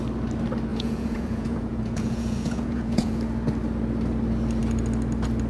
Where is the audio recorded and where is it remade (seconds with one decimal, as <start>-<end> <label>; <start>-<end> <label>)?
0.0-0.7 recorded; 0.7-3.2 remade; 3.2-5.5 recorded